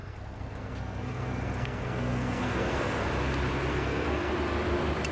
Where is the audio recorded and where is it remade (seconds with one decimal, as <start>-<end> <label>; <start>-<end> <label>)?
0.0-3.1 remade; 3.1-3.7 recorded; 3.7-4.3 remade; 4.3-5.1 recorded